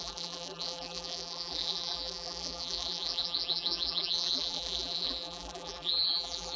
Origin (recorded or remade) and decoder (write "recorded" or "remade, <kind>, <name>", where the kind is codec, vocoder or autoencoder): remade, vocoder, BigVGAN v2